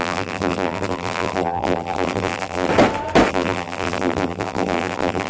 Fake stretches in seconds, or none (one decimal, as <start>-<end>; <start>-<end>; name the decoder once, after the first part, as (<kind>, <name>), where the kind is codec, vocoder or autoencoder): 0.0-2.7 (vocoder, BigVGAN v2); 3.3-5.3